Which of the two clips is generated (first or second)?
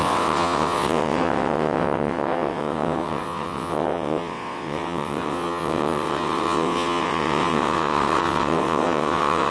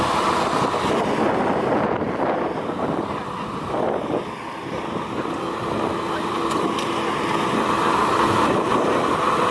first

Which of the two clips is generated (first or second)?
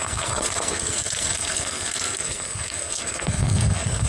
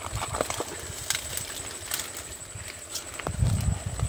first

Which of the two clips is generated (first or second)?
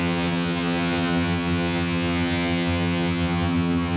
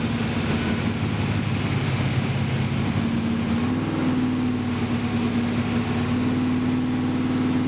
first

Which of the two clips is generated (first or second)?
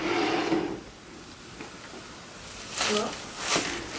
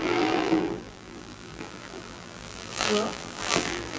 second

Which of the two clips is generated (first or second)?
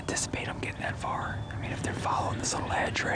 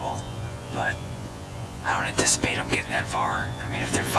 second